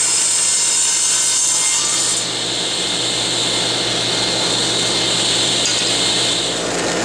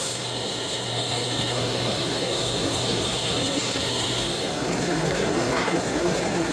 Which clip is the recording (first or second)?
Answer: first